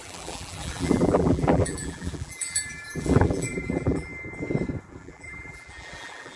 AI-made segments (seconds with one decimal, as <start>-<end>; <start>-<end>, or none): 0.0-4.1; 4.9-6.4